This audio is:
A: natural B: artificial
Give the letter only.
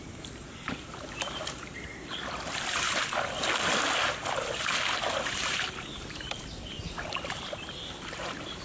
B